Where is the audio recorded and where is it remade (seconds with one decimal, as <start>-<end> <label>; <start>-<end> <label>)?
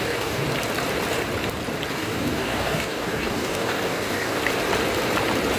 0.0-0.4 remade; 0.4-1.9 recorded; 1.9-4.4 remade; 4.4-5.6 recorded